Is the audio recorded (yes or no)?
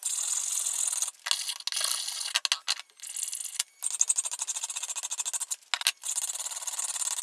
yes